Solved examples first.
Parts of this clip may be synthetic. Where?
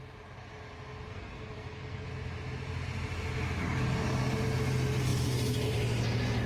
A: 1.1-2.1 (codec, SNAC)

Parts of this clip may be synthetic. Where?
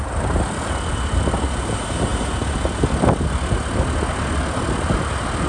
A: none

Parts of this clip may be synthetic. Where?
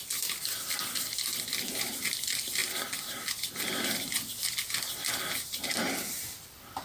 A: none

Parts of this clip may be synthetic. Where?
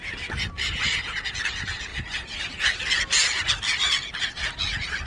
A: none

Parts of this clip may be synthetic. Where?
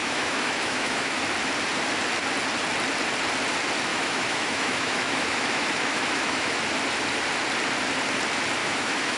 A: 0.0-1.2 (autoencoder, DAC-VAE); 3.9-6.6; 8.6-9.2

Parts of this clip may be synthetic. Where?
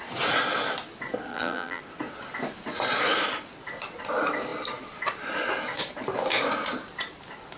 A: 1.3-1.8 (vocoder, BigVGAN v2)